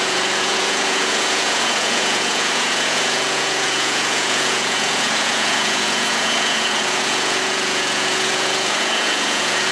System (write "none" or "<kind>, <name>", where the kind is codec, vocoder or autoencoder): vocoder, Vocos